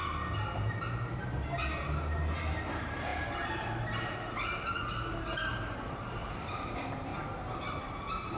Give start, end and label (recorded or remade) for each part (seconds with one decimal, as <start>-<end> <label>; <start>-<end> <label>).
0.0-1.2 recorded; 1.2-1.6 remade; 1.6-2.7 recorded; 2.7-7.1 remade; 7.1-7.8 recorded; 7.8-8.4 remade